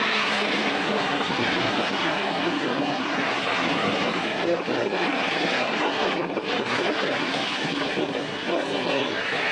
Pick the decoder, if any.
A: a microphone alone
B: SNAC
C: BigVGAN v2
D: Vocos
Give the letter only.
B